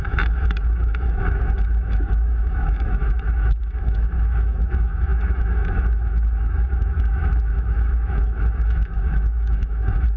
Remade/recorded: remade